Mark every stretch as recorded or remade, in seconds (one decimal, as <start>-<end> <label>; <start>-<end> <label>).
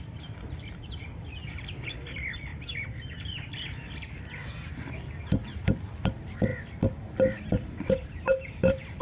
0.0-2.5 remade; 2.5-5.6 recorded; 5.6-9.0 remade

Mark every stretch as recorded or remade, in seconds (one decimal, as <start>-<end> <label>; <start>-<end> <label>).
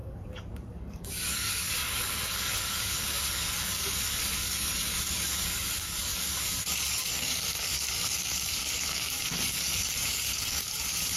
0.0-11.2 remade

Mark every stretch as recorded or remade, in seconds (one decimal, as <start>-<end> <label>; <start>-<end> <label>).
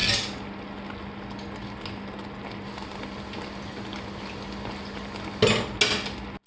0.0-6.5 recorded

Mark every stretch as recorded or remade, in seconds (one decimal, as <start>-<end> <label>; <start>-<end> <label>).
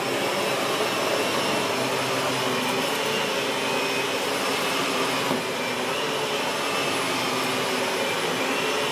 0.0-4.5 recorded; 4.5-5.3 remade; 5.3-8.9 recorded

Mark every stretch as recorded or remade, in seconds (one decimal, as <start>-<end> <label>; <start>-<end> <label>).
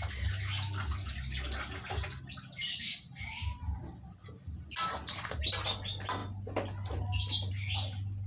0.0-8.3 recorded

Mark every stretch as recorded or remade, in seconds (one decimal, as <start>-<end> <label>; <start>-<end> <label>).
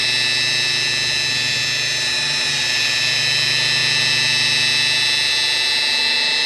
0.0-6.5 recorded